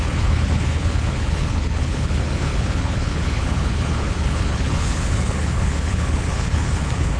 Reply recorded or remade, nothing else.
remade